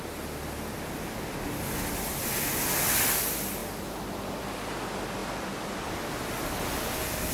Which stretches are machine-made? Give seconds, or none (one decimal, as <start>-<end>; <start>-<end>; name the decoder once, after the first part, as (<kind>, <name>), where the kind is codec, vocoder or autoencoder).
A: none